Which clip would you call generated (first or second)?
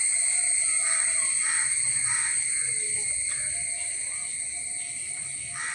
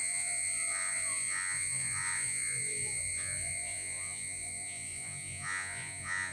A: second